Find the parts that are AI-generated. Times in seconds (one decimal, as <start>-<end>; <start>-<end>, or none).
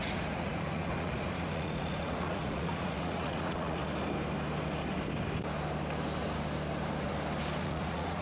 0.0-3.8; 7.6-8.2